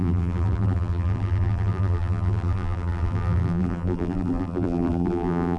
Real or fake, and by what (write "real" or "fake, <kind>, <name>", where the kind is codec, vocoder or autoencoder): fake, vocoder, BigVGAN v2